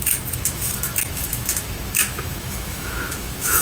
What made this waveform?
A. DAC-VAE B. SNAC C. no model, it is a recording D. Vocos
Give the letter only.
A